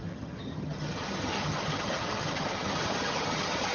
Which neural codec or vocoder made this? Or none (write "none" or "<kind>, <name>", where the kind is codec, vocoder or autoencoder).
vocoder, HiFi-GAN